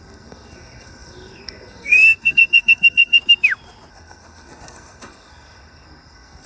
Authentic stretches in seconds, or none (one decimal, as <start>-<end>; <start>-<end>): 3.2-3.9